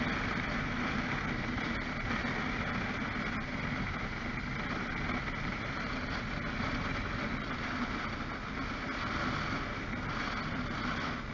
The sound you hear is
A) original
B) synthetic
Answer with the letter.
A